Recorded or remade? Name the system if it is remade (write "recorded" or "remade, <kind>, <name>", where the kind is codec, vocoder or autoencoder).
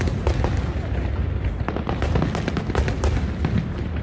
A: recorded